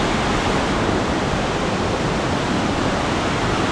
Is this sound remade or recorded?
recorded